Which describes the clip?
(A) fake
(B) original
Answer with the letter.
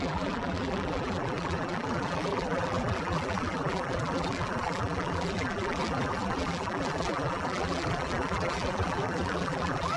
A